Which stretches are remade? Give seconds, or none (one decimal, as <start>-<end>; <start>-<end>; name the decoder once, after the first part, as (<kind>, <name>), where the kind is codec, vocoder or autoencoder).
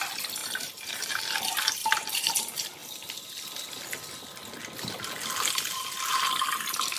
0.4-1.2 (vocoder, BigVGAN v2); 1.8-2.3